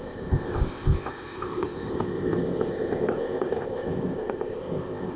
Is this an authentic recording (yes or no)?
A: no